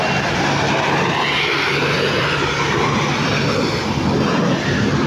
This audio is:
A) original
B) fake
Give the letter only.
A